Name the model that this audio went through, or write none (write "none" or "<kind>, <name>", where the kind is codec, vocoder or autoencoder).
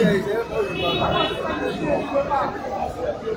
none